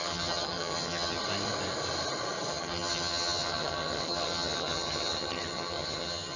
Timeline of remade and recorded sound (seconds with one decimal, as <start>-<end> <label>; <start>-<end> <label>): 0.0-1.2 remade; 1.2-2.5 recorded; 2.5-6.4 remade